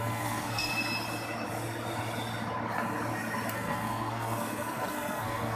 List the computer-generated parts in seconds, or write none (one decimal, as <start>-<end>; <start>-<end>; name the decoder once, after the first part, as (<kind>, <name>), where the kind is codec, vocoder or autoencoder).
0.0-0.7 (codec, SNAC); 3.5-5.6